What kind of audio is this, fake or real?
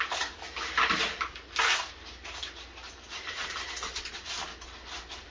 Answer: real